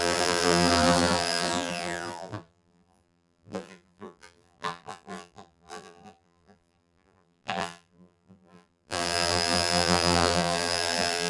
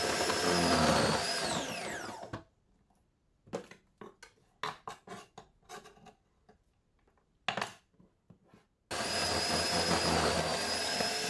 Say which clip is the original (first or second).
second